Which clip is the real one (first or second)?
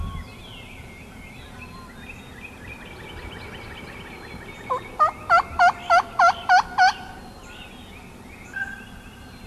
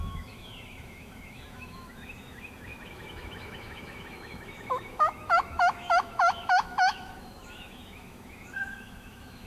first